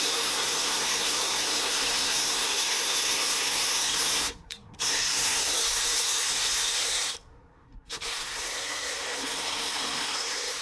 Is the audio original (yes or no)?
no